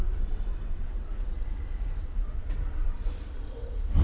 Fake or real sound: fake